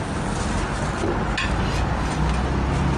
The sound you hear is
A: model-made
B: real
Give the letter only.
B